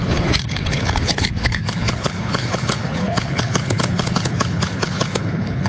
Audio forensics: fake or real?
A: fake